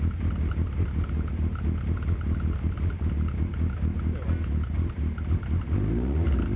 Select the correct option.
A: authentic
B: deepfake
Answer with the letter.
A